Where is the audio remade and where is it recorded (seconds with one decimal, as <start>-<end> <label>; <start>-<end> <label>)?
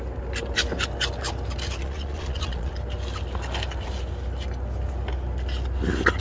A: 0.0-1.8 recorded; 1.8-2.7 remade; 2.7-6.2 recorded